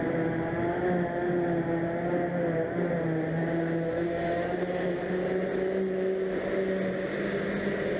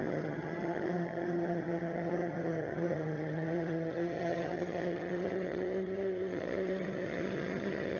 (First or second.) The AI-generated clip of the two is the second